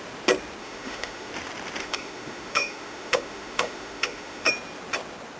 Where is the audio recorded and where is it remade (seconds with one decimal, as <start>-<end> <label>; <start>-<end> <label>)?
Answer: 0.0-0.6 recorded; 0.6-1.3 remade; 1.3-1.8 recorded; 1.8-4.5 remade; 4.5-5.4 recorded